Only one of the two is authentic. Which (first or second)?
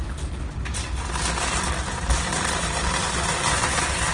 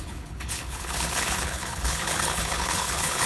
first